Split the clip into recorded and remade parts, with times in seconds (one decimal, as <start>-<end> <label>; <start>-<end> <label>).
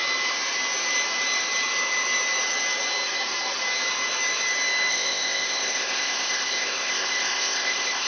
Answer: 0.0-4.9 recorded; 4.9-8.1 remade